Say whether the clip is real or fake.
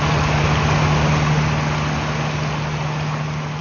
real